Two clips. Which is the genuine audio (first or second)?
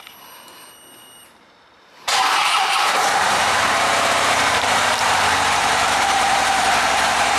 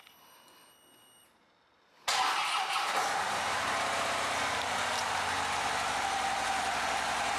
second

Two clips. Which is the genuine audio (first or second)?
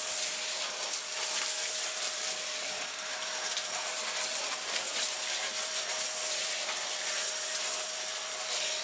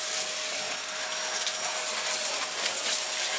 second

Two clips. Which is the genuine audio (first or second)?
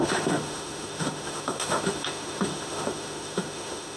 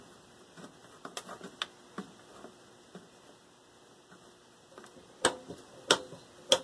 second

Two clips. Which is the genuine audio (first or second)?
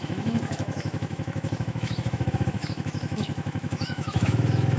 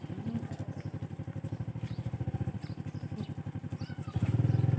second